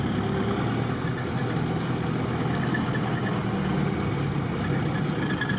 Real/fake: real